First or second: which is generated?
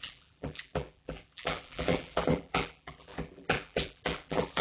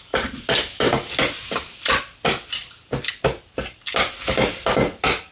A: first